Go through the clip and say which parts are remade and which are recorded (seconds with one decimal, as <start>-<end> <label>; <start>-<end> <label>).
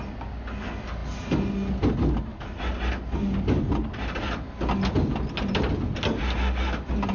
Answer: 0.0-7.1 recorded